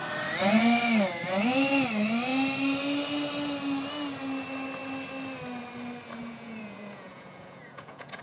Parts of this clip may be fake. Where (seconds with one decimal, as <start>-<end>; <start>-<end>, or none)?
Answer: 6.2-8.2